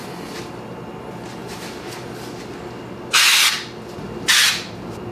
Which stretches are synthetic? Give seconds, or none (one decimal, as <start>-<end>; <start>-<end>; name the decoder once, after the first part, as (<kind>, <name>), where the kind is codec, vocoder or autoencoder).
none